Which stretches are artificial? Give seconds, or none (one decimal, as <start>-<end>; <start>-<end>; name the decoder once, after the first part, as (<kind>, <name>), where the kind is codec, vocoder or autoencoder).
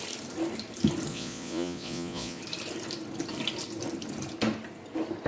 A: 1.1-2.4 (vocoder, Vocos)